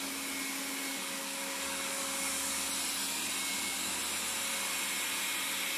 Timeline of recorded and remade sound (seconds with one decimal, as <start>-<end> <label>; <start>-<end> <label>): 0.0-0.9 recorded; 0.9-2.7 remade; 2.7-3.5 recorded; 3.5-4.0 remade; 4.0-5.8 recorded